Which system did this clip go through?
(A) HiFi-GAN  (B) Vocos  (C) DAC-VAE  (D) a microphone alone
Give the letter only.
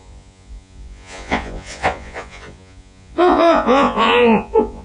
B